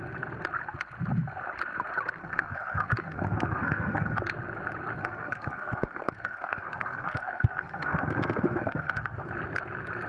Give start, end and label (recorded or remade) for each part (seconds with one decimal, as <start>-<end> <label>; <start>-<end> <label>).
0.0-2.2 recorded; 2.2-4.2 remade; 4.2-5.0 recorded; 5.0-9.3 remade; 9.3-10.1 recorded